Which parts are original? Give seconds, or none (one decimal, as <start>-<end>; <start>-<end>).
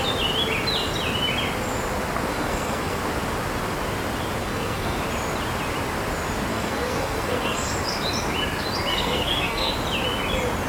0.0-2.3; 3.0-4.4; 5.0-6.5; 7.7-8.9; 9.7-10.7